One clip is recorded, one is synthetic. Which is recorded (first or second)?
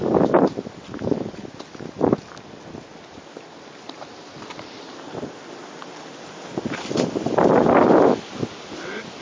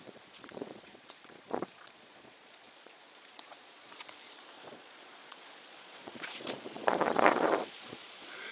first